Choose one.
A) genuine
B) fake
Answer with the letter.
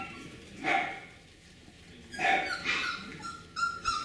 A